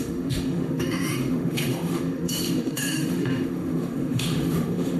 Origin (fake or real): fake